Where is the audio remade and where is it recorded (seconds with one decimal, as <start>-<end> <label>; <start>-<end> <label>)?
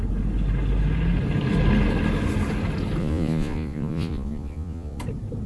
0.0-3.0 recorded; 3.0-5.0 remade; 5.0-5.5 recorded